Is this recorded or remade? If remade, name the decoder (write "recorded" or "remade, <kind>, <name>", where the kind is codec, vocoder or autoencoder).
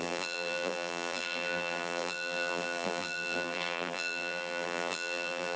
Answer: remade, vocoder, BigVGAN v2